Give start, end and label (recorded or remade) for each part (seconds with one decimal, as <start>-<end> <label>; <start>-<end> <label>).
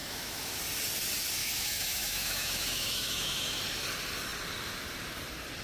0.0-0.6 remade; 0.6-1.4 recorded; 1.4-3.6 remade; 3.6-5.6 recorded